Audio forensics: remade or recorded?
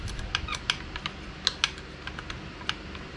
recorded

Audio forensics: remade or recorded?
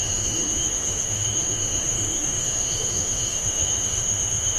remade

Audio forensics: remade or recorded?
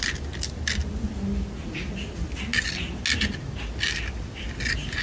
recorded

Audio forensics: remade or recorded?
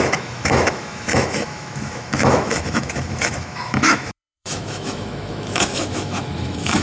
remade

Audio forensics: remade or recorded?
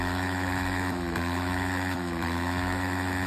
remade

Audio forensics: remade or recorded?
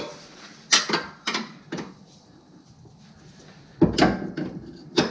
recorded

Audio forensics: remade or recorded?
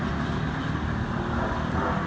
recorded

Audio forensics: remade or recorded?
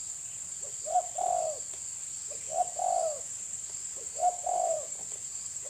recorded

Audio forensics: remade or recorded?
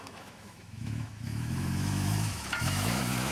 remade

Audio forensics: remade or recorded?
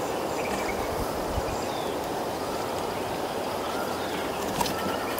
recorded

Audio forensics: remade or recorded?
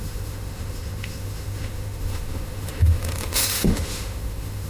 remade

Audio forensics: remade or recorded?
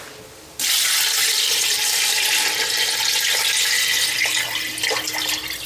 recorded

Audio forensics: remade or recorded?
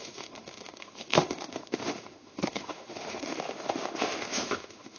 remade